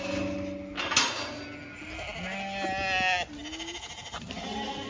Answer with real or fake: real